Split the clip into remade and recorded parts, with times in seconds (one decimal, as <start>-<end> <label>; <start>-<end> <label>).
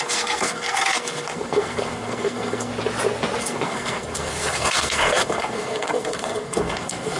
0.0-2.7 remade; 2.7-3.4 recorded; 3.4-7.2 remade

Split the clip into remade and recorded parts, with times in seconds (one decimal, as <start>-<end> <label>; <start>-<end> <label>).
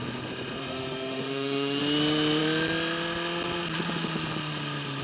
0.0-0.6 recorded; 0.6-1.8 remade; 1.8-5.0 recorded